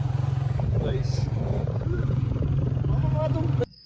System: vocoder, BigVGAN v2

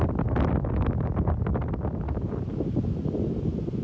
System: none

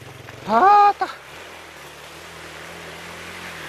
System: none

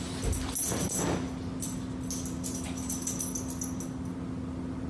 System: none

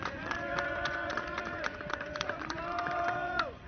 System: vocoder, Vocos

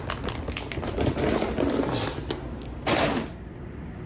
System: none